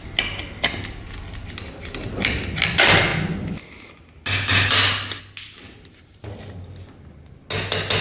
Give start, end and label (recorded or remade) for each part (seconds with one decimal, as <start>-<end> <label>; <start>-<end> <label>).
0.0-8.0 recorded